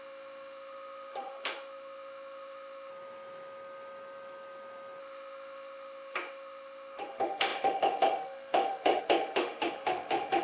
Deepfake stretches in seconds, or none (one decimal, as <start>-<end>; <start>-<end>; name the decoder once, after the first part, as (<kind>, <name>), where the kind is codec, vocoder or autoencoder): 0.0-2.9 (autoencoder, DAC-VAE); 5.0-10.4